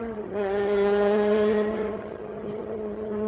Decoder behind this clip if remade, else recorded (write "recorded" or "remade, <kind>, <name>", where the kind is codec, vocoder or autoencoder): remade, vocoder, HiFi-GAN